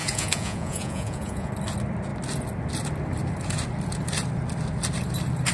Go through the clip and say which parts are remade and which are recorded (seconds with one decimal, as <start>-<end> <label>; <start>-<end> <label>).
0.0-1.5 remade; 1.5-5.5 recorded